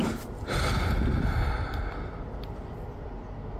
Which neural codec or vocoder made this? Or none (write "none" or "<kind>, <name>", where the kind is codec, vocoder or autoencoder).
none